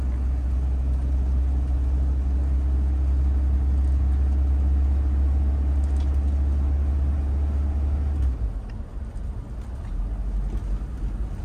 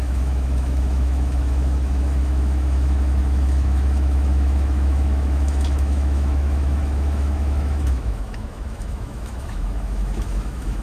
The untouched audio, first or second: first